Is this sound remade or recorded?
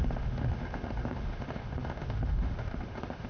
remade